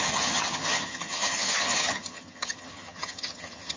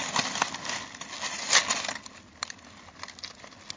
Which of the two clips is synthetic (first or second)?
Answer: first